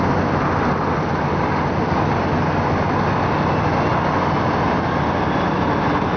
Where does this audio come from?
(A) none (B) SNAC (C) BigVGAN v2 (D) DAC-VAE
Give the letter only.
A